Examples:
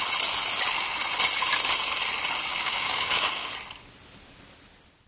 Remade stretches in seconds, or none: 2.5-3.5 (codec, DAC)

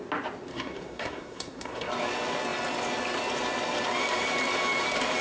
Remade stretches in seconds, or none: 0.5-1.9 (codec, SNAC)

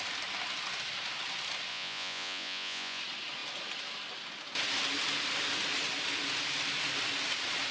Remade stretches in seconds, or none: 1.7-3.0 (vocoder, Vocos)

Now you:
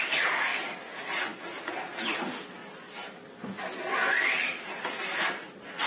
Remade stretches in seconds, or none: 0.5-2.2 (vocoder, BigVGAN v2); 2.6-3.2; 4.4-5.9

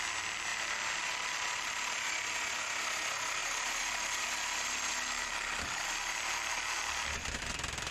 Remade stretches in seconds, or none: none

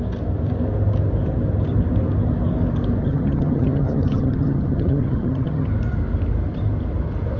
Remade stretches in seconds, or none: 3.0-5.7 (vocoder, HiFi-GAN)